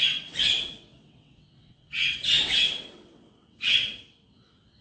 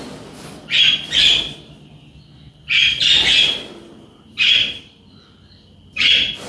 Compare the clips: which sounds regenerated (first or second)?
first